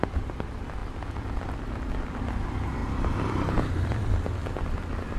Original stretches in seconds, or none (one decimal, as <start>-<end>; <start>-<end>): 0.0-0.8; 2.2-2.8; 4.5-5.2